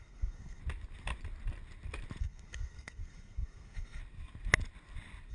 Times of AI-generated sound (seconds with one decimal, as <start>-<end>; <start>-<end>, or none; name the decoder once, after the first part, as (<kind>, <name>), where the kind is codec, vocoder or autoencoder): 0.0-0.6 (codec, SNAC); 2.2-4.0

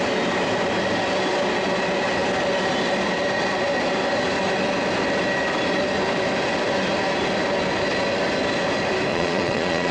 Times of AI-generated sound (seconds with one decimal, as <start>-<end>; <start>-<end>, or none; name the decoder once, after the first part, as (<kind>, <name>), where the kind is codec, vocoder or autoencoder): 9.1-9.9 (vocoder, Vocos)

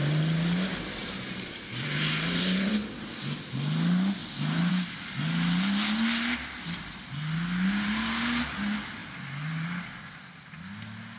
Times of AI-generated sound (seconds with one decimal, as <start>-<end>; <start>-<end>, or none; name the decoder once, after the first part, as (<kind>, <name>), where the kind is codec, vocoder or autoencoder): 1.0-2.7 (vocoder, BigVGAN v2)

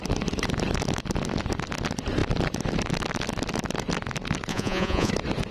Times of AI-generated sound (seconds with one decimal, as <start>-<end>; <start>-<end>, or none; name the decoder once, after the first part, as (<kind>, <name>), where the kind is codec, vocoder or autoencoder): 4.5-5.1 (vocoder, Vocos)

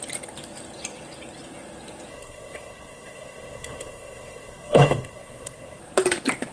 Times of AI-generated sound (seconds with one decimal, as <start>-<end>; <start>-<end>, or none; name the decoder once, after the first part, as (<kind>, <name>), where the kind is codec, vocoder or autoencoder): 2.1-5.8 (codec, SNAC)

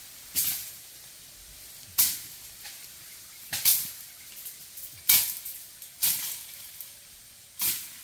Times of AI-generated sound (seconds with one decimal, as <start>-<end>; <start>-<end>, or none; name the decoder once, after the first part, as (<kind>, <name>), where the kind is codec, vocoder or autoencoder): none

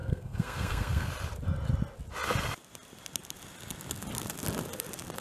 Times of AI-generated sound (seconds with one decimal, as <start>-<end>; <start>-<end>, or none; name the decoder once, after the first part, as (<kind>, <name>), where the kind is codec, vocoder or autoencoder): 0.0-1.1 (codec, SNAC)

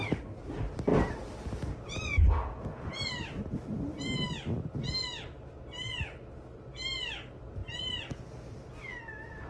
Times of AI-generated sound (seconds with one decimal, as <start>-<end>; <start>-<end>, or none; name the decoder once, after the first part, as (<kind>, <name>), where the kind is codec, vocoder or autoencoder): none